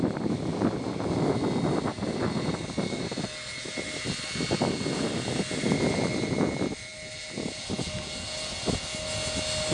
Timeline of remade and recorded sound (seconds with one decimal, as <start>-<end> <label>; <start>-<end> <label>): 0.0-9.7 recorded